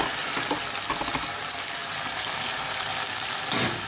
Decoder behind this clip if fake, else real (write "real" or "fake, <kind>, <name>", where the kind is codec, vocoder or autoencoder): real